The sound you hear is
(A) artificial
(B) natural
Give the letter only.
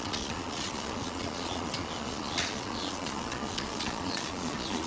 A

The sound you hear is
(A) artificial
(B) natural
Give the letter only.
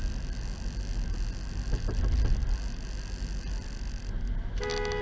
B